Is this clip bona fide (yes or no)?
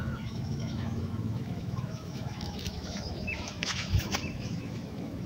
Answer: no